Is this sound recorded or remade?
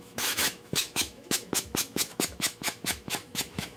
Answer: remade